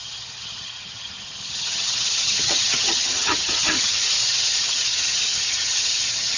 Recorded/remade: remade